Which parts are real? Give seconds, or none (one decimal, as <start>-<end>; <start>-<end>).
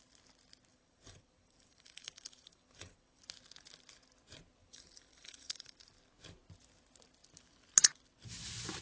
0.0-0.7; 3.2-4.6; 5.9-8.8